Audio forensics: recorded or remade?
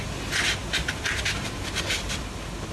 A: recorded